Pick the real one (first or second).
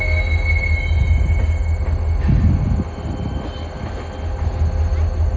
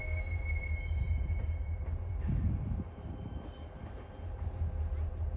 first